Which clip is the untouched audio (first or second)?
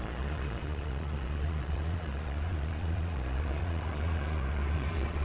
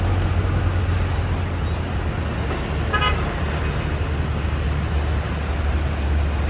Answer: second